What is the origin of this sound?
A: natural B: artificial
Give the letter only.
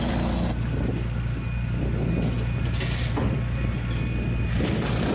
A